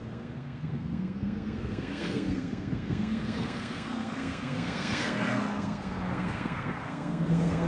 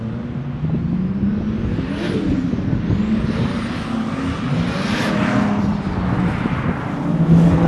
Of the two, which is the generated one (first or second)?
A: first